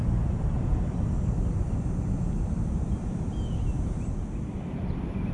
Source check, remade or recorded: recorded